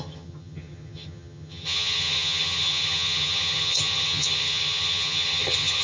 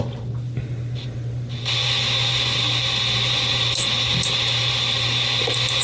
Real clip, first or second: second